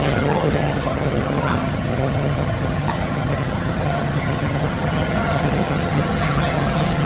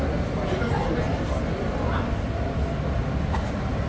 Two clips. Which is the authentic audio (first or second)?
second